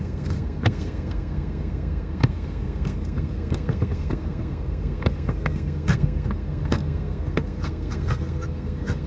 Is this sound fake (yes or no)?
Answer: yes